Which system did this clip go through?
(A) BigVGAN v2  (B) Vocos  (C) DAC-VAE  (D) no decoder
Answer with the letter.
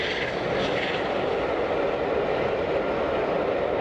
D